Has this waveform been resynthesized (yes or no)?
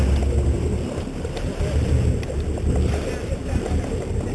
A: no